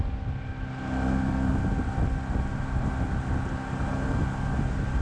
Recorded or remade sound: recorded